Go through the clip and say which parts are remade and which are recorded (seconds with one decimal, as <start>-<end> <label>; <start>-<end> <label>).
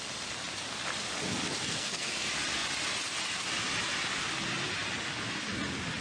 0.0-1.6 recorded; 1.6-2.1 remade; 2.1-6.0 recorded